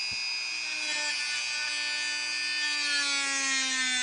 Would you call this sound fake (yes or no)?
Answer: no